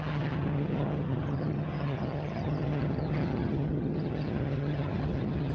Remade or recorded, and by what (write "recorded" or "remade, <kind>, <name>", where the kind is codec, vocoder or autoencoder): remade, vocoder, HiFi-GAN